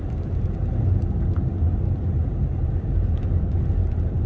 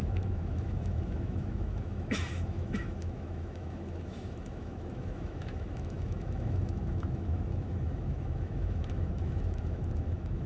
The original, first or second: first